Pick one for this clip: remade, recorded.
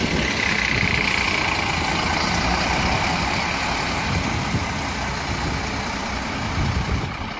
recorded